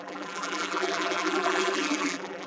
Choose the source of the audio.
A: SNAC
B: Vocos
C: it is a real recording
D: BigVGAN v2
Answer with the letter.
D